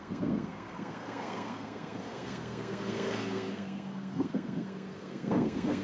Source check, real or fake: fake